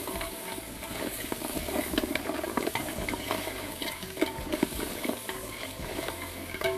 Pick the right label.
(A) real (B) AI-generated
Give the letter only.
B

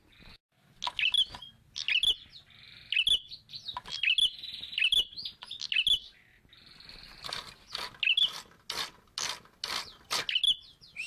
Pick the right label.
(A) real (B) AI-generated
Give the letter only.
A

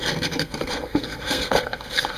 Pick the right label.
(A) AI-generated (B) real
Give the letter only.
A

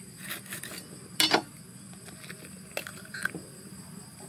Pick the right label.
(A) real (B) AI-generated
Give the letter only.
A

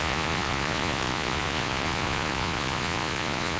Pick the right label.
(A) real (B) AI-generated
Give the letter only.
B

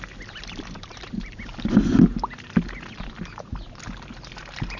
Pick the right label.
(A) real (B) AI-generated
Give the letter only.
A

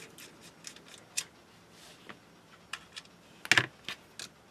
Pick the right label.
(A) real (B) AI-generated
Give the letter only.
A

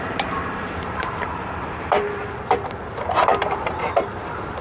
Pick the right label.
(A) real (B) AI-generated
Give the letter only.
B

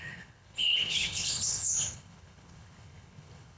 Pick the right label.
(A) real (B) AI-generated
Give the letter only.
B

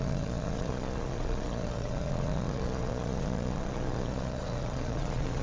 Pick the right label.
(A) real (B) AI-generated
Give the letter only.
B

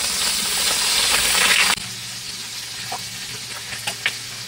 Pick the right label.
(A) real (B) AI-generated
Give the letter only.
A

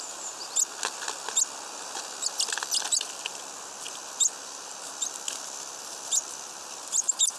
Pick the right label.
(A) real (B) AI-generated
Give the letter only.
A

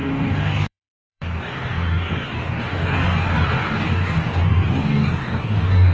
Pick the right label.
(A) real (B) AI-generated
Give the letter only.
B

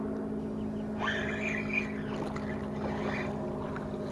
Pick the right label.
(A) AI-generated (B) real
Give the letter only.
B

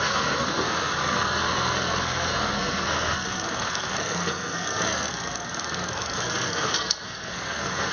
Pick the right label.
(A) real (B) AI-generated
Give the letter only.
B